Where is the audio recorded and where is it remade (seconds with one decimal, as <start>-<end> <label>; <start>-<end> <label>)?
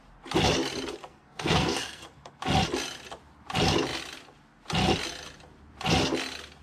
0.0-1.0 recorded; 1.0-2.4 remade; 2.4-6.6 recorded